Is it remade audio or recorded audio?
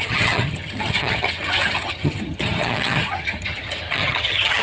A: remade